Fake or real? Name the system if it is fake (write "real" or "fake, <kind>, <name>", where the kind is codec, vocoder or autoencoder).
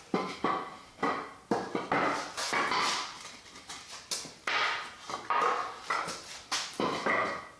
real